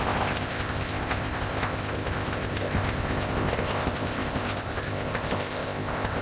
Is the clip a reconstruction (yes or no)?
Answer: yes